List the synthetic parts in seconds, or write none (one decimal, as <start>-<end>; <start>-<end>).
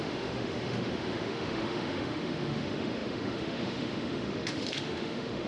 0.0-5.5